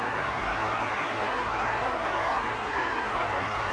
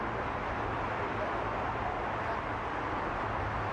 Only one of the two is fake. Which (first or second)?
first